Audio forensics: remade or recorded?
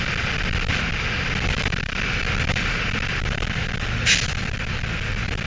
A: recorded